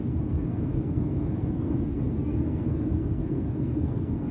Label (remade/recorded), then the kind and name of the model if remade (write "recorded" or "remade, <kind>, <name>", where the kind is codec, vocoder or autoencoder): remade, codec, SNAC